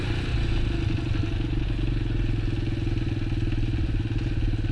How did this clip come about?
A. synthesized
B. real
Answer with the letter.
B